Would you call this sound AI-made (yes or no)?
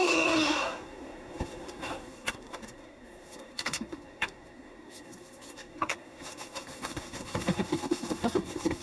yes